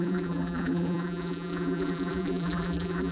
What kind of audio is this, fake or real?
fake